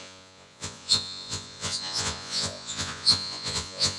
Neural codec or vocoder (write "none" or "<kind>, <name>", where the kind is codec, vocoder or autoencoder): vocoder, Vocos